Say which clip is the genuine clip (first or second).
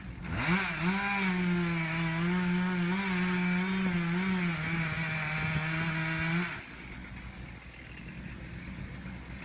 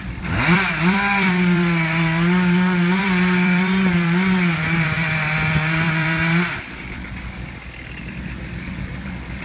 first